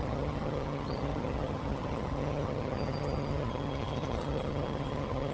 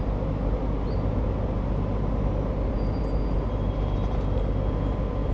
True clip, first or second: second